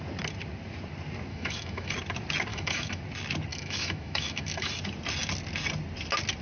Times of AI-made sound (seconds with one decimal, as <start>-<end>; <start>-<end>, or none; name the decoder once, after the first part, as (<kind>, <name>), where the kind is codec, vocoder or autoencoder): 1.3-1.9 (autoencoder, DAC-VAE); 2.5-3.0; 3.5-4.7